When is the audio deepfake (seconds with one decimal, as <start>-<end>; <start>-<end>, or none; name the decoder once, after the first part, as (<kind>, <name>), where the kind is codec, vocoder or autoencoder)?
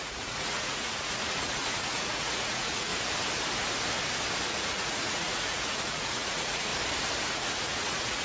0.0-2.9 (vocoder, Vocos); 4.5-6.7; 7.3-8.2